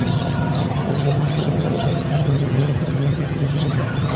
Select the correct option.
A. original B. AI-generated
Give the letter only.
B